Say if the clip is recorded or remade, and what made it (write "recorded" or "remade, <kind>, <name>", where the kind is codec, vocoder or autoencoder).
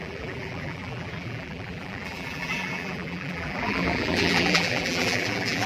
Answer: remade, vocoder, BigVGAN v2